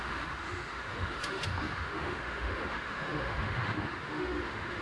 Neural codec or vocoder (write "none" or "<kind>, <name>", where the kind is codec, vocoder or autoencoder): autoencoder, DAC-VAE